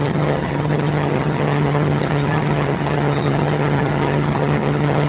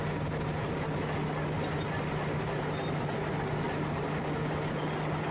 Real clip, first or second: second